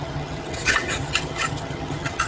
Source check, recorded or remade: remade